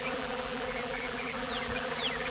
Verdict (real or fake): fake